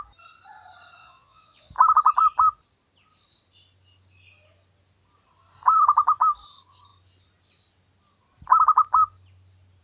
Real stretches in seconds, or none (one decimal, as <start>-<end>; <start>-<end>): 0.0-1.0; 1.7-9.8